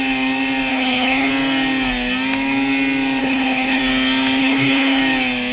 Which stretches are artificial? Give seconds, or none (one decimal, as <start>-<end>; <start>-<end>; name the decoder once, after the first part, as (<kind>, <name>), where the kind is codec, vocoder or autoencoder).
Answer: 0.7-1.3 (codec, HILCodec); 3.2-3.8; 4.4-5.0